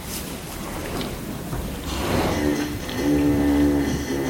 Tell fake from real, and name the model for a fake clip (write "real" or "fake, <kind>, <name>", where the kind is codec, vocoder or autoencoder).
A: real